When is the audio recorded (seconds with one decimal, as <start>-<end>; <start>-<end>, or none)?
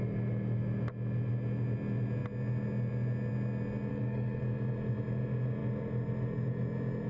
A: 0.0-3.9; 4.4-7.1